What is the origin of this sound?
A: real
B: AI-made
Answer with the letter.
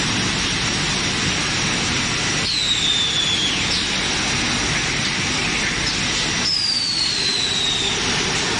A